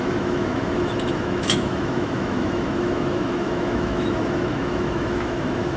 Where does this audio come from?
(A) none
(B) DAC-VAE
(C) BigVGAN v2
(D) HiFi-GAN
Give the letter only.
B